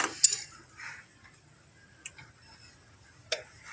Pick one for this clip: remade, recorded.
recorded